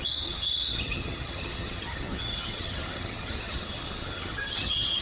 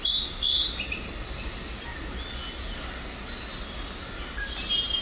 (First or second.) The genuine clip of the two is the second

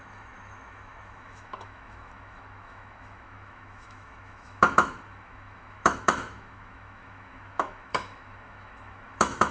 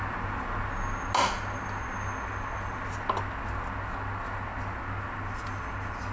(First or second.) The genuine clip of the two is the second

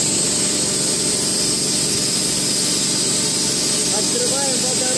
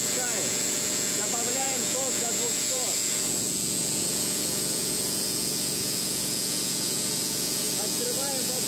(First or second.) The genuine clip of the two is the first